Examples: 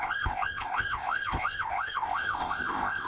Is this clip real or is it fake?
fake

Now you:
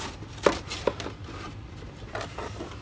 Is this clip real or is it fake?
real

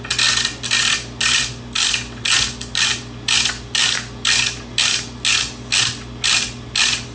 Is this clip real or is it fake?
real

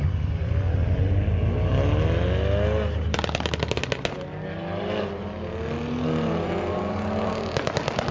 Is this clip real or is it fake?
real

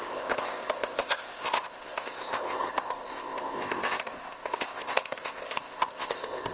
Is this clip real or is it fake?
fake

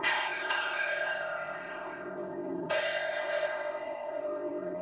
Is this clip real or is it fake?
fake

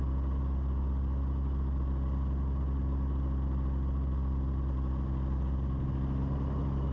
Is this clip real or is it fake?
real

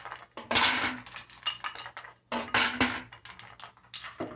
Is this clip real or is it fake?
real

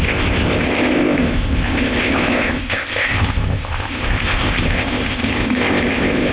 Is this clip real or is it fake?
fake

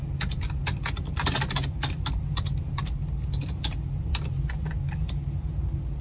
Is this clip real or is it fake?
real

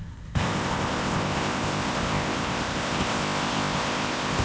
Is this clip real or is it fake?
fake